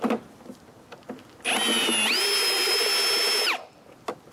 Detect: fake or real real